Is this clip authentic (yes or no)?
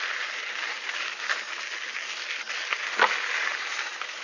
yes